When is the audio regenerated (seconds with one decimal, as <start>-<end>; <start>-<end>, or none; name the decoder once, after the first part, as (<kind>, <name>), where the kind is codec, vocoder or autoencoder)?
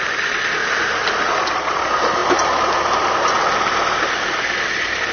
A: 0.6-1.6 (vocoder, BigVGAN v2)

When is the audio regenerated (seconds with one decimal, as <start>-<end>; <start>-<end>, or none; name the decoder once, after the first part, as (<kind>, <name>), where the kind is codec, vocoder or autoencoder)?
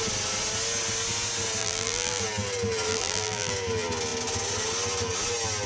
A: 1.6-2.2 (vocoder, BigVGAN v2); 2.9-3.5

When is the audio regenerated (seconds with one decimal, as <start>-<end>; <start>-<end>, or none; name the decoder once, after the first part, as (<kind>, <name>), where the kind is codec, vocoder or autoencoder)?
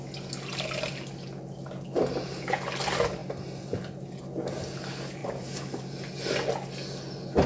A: 5.2-5.8 (vocoder, BigVGAN v2)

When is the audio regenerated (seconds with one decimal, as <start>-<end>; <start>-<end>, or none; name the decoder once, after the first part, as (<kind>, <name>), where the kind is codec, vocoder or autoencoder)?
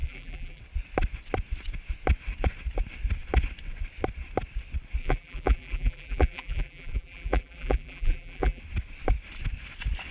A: 0.0-0.6 (vocoder, BigVGAN v2); 5.0-8.6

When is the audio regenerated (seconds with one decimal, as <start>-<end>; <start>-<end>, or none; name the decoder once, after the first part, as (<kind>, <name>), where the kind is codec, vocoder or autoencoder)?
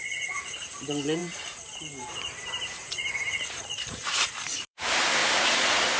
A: 0.0-5.2 (vocoder, BigVGAN v2)